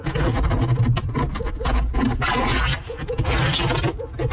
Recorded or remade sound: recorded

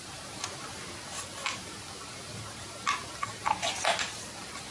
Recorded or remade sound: remade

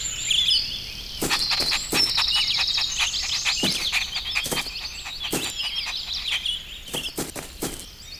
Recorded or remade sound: recorded